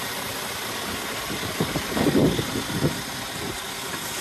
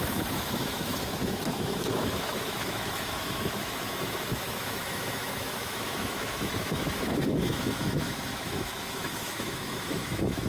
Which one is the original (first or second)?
first